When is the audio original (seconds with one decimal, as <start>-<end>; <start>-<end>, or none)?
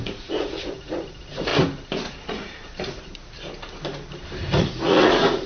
1.5-2.2; 3.1-4.4